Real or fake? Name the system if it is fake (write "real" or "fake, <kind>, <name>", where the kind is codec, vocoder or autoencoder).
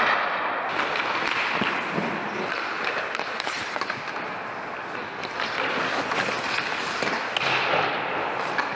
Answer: real